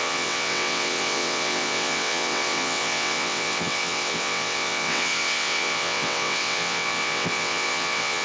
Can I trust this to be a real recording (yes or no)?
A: no